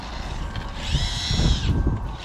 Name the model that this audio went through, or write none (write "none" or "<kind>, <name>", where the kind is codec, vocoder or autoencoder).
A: none